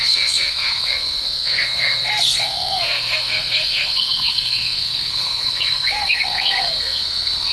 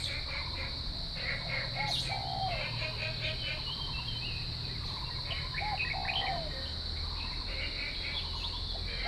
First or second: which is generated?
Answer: first